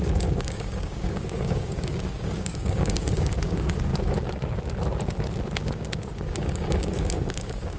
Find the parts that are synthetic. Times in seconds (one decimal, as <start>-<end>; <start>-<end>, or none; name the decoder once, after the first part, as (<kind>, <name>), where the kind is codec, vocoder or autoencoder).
0.0-3.9 (codec, DAC); 5.6-7.8

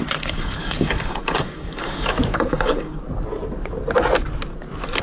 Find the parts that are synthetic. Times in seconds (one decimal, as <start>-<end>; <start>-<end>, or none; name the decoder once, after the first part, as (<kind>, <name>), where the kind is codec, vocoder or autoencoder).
0.0-3.0 (codec, DAC)

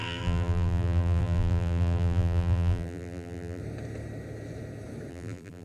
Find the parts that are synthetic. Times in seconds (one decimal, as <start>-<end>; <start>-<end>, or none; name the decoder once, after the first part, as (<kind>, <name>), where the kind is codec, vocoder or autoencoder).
0.0-3.6 (vocoder, BigVGAN v2); 5.1-5.6

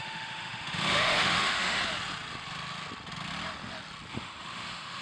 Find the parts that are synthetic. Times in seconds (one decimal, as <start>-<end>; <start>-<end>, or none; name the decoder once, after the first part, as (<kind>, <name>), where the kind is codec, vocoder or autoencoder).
0.0-1.8 (autoencoder, DAC-VAE); 4.1-5.0